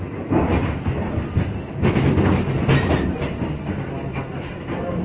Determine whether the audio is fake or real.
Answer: real